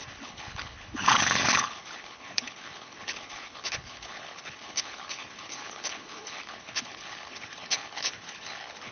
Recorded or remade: remade